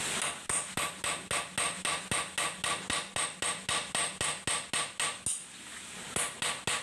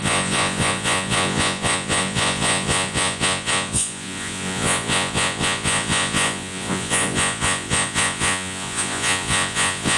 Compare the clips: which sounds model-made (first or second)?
second